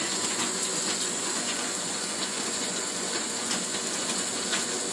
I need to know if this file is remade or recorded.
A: remade